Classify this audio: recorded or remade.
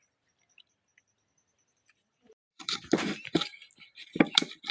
recorded